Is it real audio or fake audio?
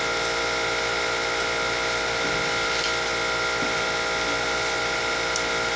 real